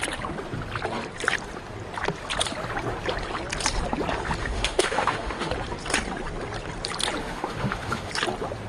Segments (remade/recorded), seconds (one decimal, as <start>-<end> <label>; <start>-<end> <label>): 0.0-4.4 recorded; 4.4-5.5 remade; 5.5-7.2 recorded; 7.2-8.1 remade; 8.1-8.7 recorded